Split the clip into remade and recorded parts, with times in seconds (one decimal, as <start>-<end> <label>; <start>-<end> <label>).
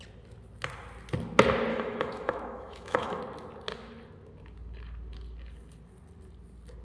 0.0-1.7 recorded; 1.7-3.2 remade; 3.2-6.8 recorded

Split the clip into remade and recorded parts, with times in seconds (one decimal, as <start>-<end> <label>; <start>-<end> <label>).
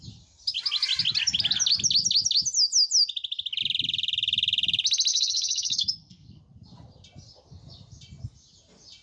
0.0-5.1 recorded; 5.1-6.4 remade; 6.4-9.0 recorded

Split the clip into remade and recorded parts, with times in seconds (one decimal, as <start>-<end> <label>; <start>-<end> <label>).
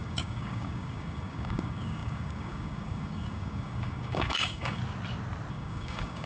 0.0-4.8 remade; 4.8-5.5 recorded; 5.5-6.3 remade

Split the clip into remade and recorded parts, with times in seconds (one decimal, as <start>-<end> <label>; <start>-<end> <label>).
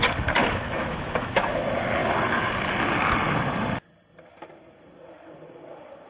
0.0-0.4 recorded; 0.4-1.6 remade; 1.6-6.1 recorded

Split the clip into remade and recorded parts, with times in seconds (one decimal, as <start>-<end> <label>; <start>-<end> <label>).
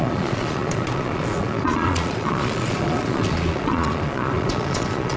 0.0-5.2 remade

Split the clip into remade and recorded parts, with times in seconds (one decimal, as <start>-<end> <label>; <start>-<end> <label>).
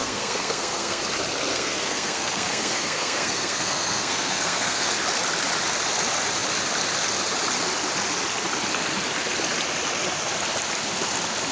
0.0-1.0 remade; 1.0-1.5 recorded; 1.5-4.9 remade; 4.9-11.5 recorded